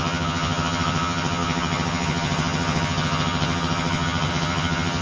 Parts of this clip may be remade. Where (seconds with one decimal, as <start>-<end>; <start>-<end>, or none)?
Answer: 0.0-5.0